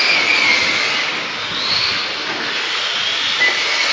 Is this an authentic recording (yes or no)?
yes